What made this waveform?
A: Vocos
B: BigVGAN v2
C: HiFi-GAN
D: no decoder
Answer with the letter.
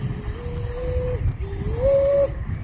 D